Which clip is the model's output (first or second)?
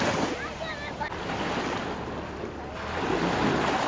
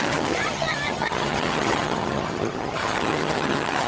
second